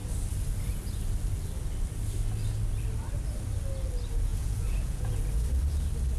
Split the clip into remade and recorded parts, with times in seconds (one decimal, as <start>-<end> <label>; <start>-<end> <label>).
0.0-4.3 recorded; 4.3-5.2 remade; 5.2-6.2 recorded